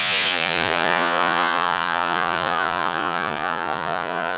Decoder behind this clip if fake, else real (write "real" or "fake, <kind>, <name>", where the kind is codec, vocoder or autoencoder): fake, vocoder, Vocos